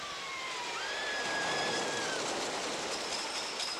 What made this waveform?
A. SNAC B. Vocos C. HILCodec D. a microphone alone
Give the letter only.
D